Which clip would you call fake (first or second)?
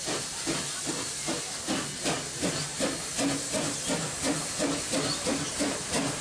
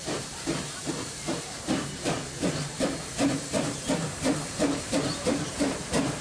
second